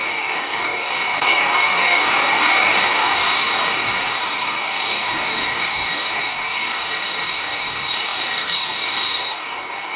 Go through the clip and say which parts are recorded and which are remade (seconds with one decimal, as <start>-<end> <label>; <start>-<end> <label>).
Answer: 0.0-10.0 remade